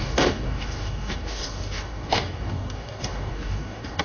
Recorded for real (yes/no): no